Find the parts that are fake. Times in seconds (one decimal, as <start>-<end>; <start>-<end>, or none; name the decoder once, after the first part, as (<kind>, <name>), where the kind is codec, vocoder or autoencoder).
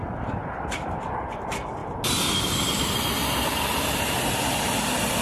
none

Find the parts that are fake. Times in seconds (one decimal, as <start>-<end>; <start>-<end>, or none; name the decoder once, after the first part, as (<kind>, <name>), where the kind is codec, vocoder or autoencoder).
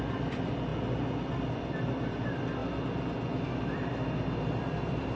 0.0-0.7 (vocoder, BigVGAN v2); 1.5-2.6; 4.7-5.2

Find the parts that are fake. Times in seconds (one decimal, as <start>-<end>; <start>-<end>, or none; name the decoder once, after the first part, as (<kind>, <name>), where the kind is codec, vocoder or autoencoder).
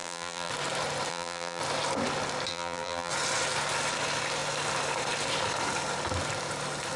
0.0-0.5 (vocoder, BigVGAN v2); 1.1-1.6; 2.5-3.1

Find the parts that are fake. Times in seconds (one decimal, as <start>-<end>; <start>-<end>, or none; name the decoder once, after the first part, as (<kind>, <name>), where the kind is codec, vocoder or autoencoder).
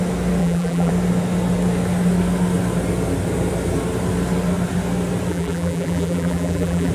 0.4-0.9 (vocoder, BigVGAN v2); 5.3-6.9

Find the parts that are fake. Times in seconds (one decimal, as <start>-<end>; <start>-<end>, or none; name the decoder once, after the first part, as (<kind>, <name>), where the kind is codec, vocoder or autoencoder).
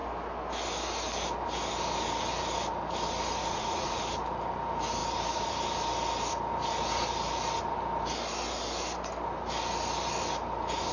3.4-4.0 (vocoder, Vocos)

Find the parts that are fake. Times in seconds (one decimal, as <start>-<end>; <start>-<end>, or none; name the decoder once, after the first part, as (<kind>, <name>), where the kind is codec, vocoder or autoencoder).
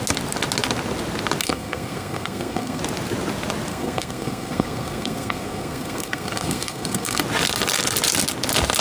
1.4-2.8 (codec, SNAC); 3.7-7.2